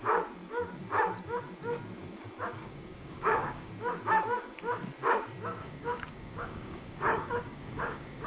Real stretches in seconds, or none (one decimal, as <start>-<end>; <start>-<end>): 0.0-2.6; 3.7-5.6